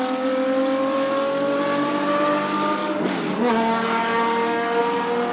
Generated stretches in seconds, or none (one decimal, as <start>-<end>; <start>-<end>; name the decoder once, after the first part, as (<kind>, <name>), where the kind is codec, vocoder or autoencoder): 2.8-4.8 (codec, DAC)